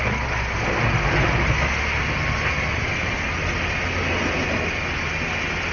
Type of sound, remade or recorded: recorded